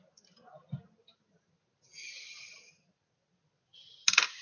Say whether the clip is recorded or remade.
recorded